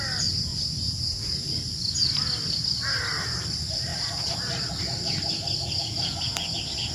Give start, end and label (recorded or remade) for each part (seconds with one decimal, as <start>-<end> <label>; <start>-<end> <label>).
0.0-6.9 recorded